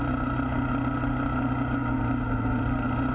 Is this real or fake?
real